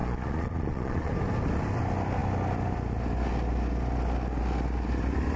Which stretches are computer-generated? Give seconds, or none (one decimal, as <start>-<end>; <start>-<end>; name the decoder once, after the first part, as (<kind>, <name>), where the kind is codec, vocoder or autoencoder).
0.0-1.1 (vocoder, Vocos)